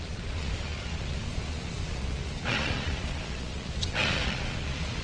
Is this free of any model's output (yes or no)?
no